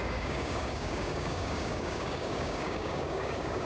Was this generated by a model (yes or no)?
yes